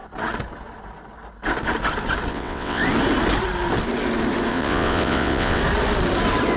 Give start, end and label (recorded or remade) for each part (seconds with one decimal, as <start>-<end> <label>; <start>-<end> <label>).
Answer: 0.0-2.3 recorded; 2.3-2.8 remade; 2.8-4.5 recorded; 4.5-5.6 remade; 5.6-6.6 recorded